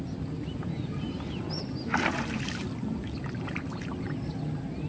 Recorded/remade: recorded